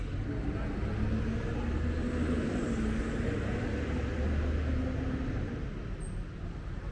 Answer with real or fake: real